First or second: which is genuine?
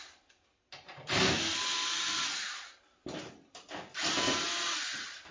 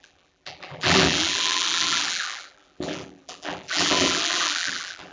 first